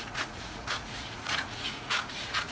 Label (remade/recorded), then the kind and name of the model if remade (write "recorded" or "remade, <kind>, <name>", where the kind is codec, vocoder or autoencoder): remade, vocoder, Vocos